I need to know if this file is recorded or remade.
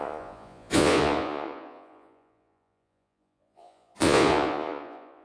remade